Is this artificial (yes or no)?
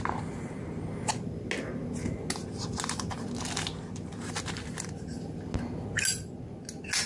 no